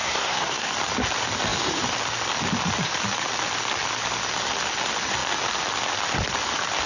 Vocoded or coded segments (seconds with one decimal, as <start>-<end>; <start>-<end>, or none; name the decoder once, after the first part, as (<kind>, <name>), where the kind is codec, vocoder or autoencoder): 0.0-0.7 (codec, SNAC)